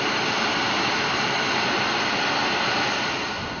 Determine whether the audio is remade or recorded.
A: recorded